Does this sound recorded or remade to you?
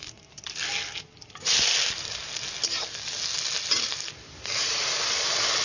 recorded